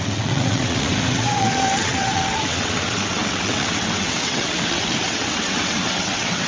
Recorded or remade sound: remade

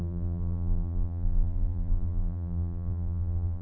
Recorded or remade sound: remade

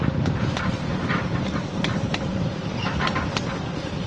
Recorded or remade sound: recorded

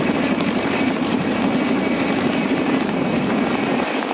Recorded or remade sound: recorded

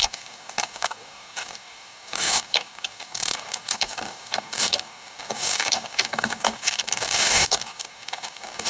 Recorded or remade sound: remade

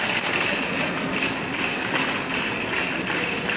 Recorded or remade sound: recorded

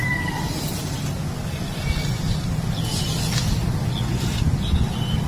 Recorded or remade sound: recorded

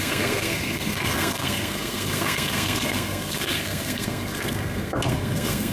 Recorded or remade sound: remade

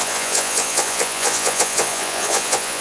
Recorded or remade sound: remade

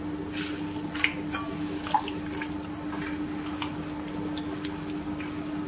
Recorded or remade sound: recorded